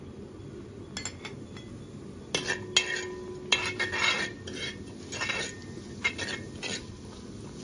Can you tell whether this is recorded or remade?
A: recorded